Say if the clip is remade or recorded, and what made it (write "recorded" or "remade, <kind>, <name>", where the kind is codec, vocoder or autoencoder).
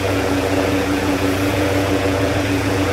remade, vocoder, Vocos